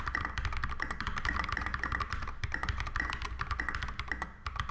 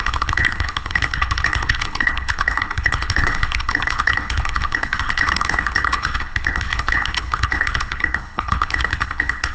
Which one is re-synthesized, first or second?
second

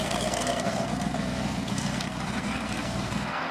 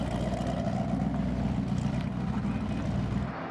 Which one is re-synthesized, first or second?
first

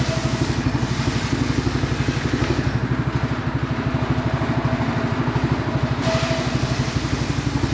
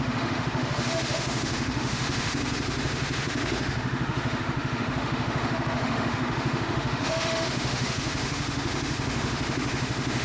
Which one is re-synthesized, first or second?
second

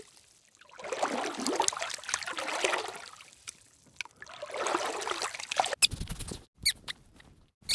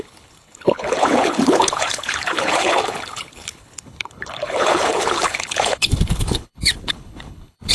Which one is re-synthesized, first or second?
second